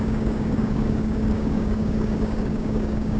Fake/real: fake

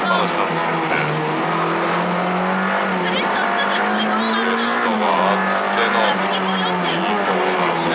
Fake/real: real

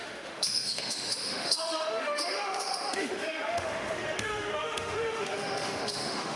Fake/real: fake